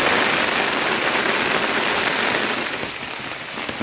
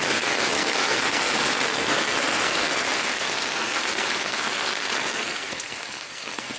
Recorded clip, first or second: first